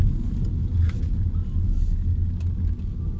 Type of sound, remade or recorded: recorded